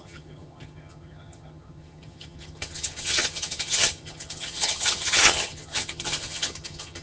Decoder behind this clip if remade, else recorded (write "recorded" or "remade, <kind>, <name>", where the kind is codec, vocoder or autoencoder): remade, vocoder, HiFi-GAN